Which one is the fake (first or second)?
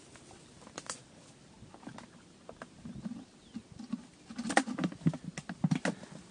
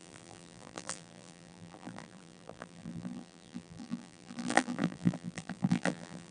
second